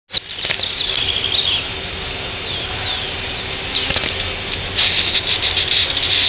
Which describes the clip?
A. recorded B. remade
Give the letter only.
A